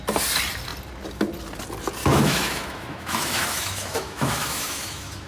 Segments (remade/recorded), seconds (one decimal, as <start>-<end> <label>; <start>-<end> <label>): 0.0-2.0 recorded; 2.0-5.3 remade